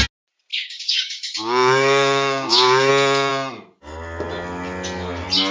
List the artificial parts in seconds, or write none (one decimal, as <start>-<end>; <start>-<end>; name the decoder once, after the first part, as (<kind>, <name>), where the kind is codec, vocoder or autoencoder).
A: 0.5-2.9 (codec, DAC)